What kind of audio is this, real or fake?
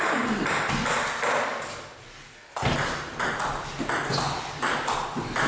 real